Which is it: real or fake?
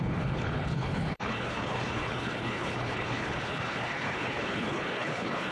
fake